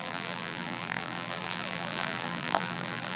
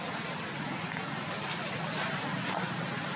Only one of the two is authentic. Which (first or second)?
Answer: second